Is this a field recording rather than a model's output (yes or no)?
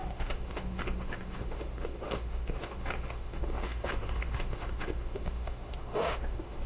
no